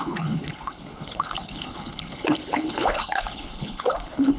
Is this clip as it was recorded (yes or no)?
no